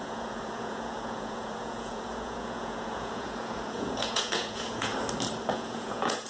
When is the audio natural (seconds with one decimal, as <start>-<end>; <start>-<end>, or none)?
4.9-5.5